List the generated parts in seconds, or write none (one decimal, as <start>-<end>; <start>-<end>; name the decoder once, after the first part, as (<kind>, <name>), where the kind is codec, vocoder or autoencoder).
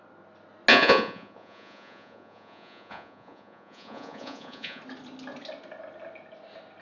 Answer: 0.7-4.8 (vocoder, Vocos)